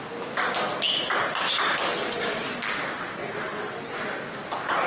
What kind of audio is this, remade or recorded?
recorded